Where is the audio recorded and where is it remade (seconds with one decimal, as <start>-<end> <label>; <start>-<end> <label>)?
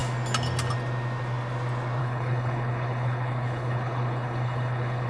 0.0-2.0 recorded; 2.0-5.1 remade